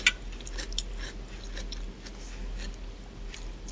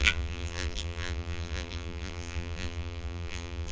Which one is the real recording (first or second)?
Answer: first